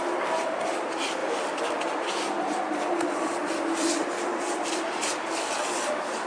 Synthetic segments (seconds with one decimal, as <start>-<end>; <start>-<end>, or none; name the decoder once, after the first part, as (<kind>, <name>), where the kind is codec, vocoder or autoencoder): none